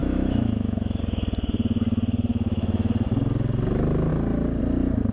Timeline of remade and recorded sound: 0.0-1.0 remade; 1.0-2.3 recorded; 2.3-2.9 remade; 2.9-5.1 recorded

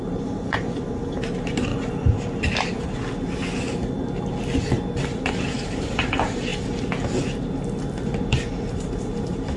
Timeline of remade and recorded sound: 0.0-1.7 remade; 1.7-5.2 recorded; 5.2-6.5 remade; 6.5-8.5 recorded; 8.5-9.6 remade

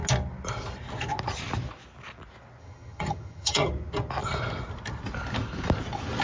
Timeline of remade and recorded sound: 0.0-2.6 recorded; 2.6-3.7 remade; 3.7-6.2 recorded

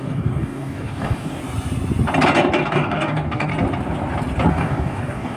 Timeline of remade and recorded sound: 0.0-1.4 remade; 1.4-2.7 recorded; 2.7-3.5 remade; 3.5-4.5 recorded; 4.5-5.4 remade